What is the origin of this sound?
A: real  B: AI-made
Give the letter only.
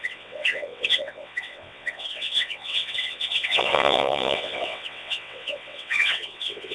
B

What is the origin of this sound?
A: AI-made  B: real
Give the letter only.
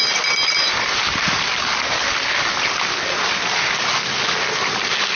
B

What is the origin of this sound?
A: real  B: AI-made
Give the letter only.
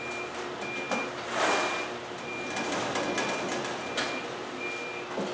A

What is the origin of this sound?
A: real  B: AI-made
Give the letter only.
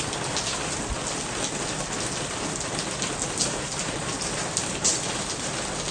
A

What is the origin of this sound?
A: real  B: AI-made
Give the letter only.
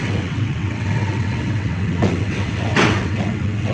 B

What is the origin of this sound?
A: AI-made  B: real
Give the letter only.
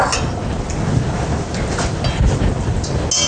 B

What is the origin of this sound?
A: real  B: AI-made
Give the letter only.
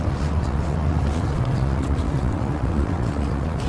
B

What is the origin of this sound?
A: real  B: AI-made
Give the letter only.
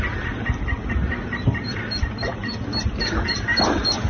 A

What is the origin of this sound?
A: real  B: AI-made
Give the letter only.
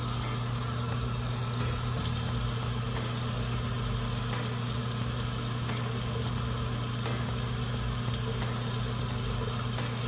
A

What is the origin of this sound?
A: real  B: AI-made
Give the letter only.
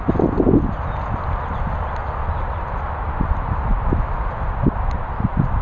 A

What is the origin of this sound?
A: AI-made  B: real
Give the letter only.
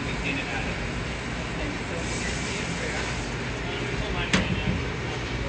B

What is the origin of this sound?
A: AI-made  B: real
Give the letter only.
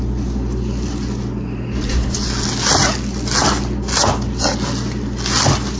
B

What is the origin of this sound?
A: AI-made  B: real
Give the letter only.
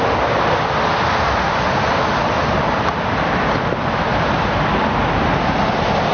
B